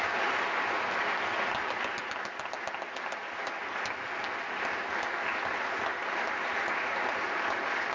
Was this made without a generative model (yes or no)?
yes